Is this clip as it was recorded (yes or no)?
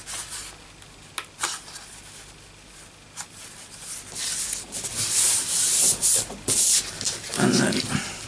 yes